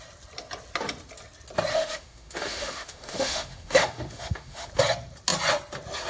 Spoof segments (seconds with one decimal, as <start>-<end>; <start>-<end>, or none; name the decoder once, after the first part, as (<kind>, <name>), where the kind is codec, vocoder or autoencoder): 1.7-4.7 (autoencoder, DAC-VAE)